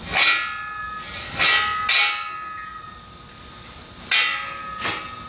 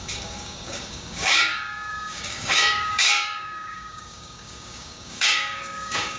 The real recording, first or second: first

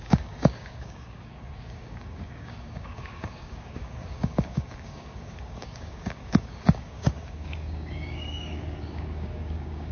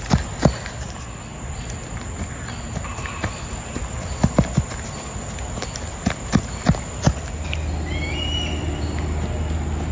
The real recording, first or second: second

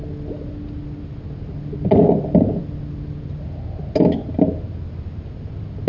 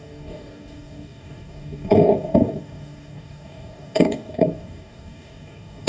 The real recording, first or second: first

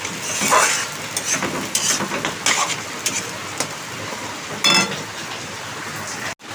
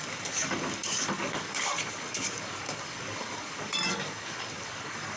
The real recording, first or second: first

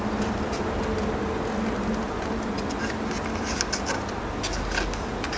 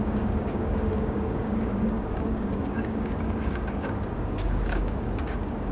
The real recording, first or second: first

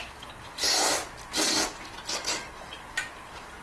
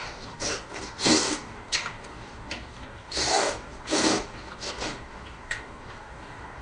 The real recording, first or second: first